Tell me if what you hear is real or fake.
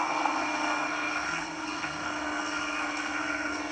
fake